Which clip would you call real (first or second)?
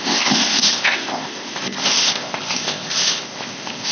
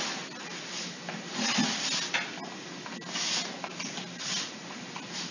second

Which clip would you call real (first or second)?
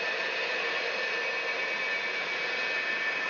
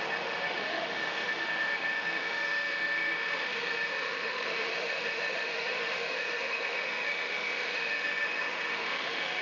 first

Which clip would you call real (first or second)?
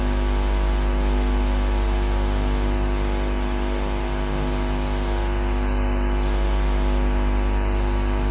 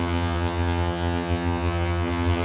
first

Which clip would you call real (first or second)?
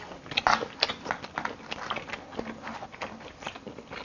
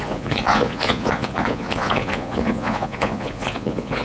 first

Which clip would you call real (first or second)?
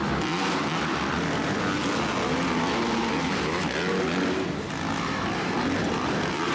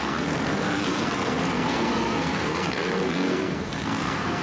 first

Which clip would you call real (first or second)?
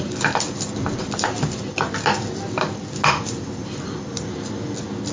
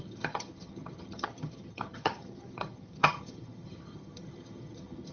first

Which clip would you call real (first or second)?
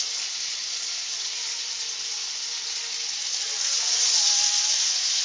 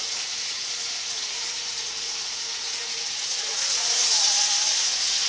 first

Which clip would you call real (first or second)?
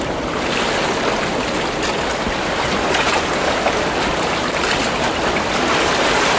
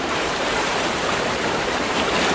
first